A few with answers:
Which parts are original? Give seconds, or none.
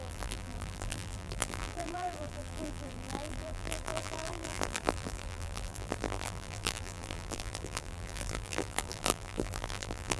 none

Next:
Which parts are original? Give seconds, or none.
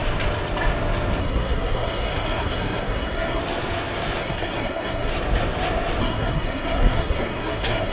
0.0-1.2; 3.4-4.2; 5.1-6.0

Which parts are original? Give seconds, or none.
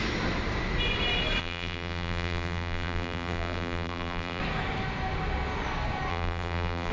0.0-1.4; 4.4-6.1